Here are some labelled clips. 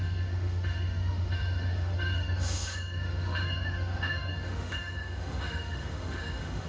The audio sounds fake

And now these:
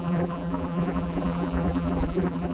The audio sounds fake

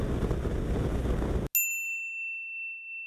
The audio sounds real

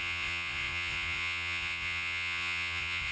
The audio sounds fake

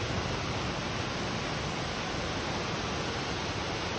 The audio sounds real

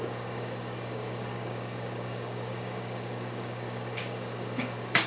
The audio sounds fake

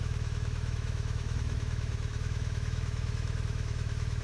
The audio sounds fake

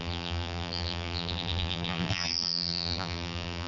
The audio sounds fake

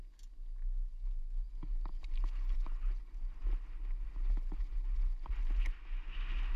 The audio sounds real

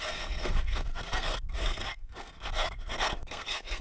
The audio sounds fake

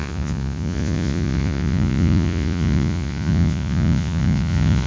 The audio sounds fake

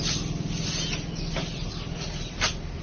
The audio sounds real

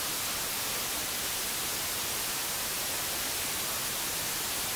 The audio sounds real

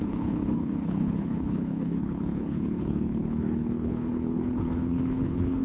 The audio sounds fake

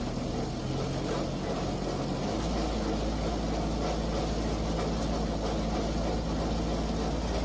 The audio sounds real